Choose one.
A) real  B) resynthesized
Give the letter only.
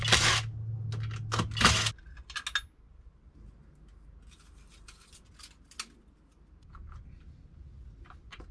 A